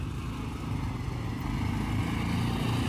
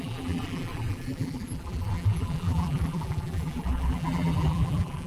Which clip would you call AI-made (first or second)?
second